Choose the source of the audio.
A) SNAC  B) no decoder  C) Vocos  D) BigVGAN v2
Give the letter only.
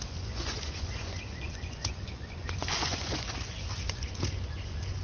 C